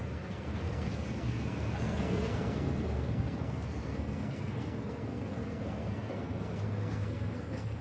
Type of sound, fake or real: fake